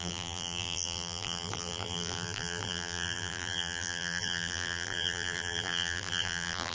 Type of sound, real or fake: fake